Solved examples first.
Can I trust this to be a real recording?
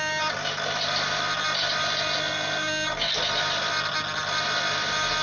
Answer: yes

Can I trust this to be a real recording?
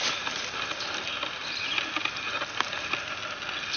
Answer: yes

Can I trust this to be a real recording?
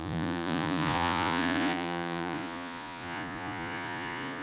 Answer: no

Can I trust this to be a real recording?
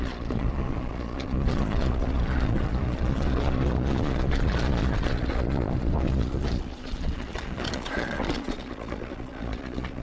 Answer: no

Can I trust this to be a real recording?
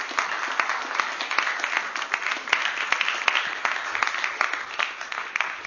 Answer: yes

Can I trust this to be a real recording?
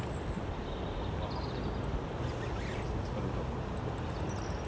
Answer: yes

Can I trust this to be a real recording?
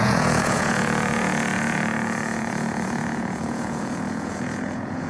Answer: no